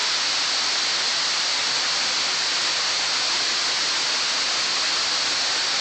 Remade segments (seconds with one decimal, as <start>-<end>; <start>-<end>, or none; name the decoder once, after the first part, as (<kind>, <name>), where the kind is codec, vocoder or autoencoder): none